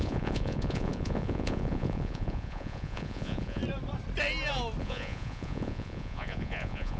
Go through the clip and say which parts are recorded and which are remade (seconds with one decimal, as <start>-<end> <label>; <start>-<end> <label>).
0.0-3.6 remade; 3.6-4.8 recorded; 4.8-7.0 remade